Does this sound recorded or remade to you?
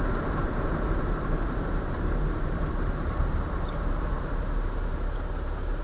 remade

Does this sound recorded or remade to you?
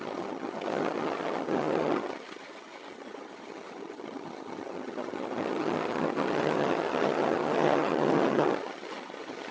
remade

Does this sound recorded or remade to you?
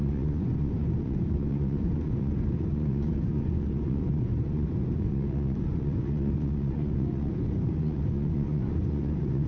remade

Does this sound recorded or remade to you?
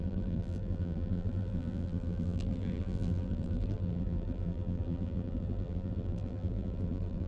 remade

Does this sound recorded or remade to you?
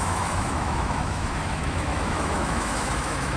remade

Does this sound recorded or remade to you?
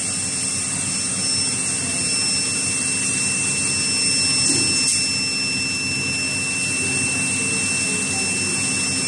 recorded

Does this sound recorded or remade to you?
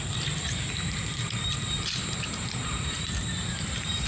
remade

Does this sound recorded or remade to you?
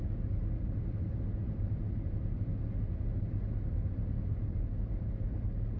recorded